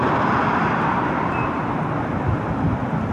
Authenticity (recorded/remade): recorded